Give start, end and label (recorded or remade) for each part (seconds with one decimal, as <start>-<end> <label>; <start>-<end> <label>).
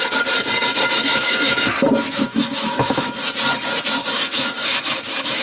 0.0-1.0 recorded; 1.0-1.7 remade; 1.7-2.3 recorded; 2.3-3.2 remade; 3.2-4.0 recorded; 4.0-5.4 remade